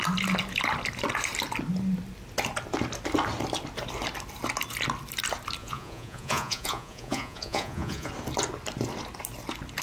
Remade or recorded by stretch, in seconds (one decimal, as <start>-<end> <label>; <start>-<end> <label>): 0.0-5.6 recorded; 5.6-8.1 remade; 8.1-9.8 recorded